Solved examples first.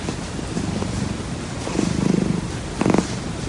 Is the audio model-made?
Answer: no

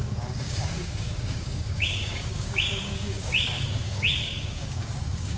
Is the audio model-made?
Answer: yes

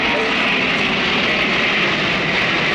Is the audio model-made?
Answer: no